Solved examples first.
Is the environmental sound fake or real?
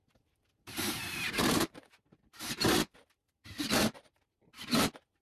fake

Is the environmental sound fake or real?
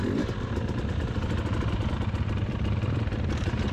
real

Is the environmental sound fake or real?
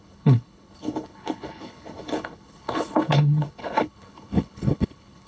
fake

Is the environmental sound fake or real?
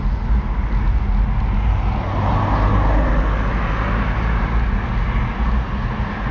real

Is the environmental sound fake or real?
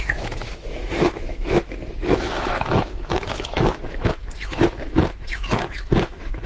fake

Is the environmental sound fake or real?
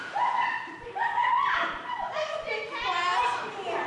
fake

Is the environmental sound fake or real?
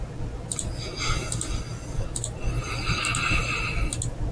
real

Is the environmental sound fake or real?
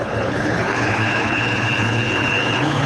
fake